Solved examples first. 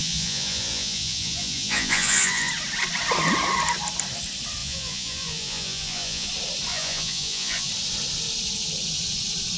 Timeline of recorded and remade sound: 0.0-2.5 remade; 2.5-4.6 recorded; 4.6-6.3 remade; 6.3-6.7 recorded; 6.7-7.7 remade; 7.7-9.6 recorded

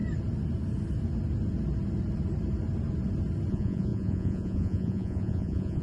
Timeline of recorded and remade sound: 0.0-3.5 recorded; 3.5-5.8 remade

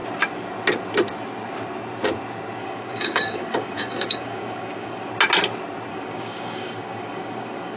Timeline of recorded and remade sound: 0.0-2.6 recorded; 2.6-5.1 remade; 5.1-5.9 recorded; 5.9-7.8 remade

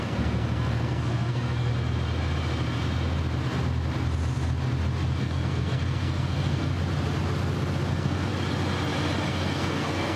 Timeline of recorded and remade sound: 0.0-1.7 remade; 1.7-5.2 recorded; 5.2-6.7 remade; 6.7-7.9 recorded; 7.9-8.3 remade; 8.3-9.3 recorded; 9.3-10.2 remade

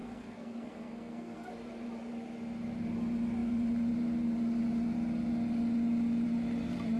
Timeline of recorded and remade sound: 0.0-1.5 remade; 1.5-7.0 recorded

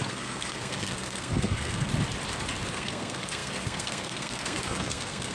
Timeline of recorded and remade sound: 0.0-1.9 remade; 1.9-2.7 recorded; 2.7-5.3 remade

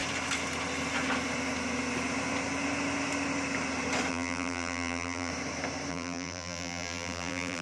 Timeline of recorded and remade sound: 0.0-4.1 recorded; 4.1-5.3 remade; 5.3-5.9 recorded; 5.9-7.6 remade

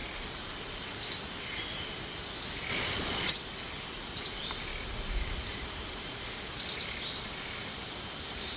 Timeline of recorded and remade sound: 0.0-2.7 recorded; 2.7-3.3 remade; 3.3-8.6 recorded